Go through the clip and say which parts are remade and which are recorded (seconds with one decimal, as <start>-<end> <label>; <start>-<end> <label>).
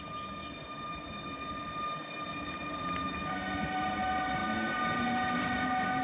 0.0-6.0 recorded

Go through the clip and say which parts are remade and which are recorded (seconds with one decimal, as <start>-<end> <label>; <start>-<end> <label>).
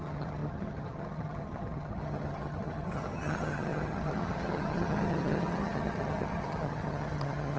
0.0-7.6 remade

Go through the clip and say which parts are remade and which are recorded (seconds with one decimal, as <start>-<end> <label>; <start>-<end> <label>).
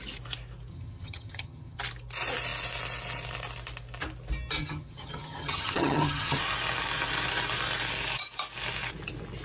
0.0-0.7 recorded; 0.7-1.8 remade; 1.8-4.6 recorded; 4.6-6.4 remade; 6.4-9.4 recorded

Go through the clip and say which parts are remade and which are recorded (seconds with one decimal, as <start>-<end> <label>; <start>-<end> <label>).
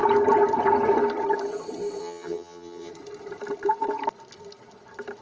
0.0-2.0 recorded; 2.0-2.9 remade; 2.9-5.2 recorded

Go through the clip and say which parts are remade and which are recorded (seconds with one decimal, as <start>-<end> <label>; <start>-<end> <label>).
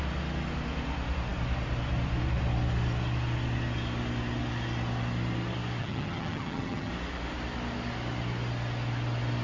0.0-5.8 recorded; 5.8-6.9 remade; 6.9-9.4 recorded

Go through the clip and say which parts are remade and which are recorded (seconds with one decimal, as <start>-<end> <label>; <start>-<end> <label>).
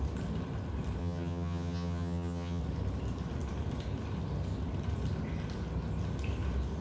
0.0-1.0 recorded; 1.0-2.6 remade; 2.6-6.8 recorded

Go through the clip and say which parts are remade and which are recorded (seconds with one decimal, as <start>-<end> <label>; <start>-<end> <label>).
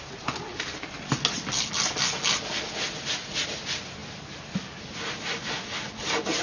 0.0-6.4 recorded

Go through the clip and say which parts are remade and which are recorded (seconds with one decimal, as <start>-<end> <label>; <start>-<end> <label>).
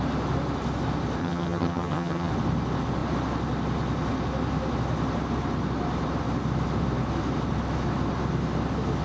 0.0-1.2 recorded; 1.2-2.3 remade; 2.3-9.0 recorded